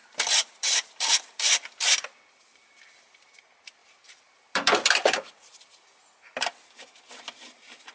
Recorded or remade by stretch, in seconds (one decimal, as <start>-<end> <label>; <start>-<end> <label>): 0.0-3.4 remade; 3.4-3.8 recorded; 3.8-5.3 remade; 5.3-7.9 recorded